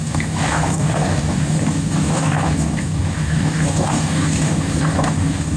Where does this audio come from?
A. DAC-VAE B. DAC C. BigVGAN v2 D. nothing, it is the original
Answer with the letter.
B